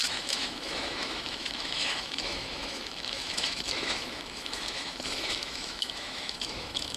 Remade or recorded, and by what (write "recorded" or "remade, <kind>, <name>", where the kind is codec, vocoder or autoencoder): remade, autoencoder, DAC-VAE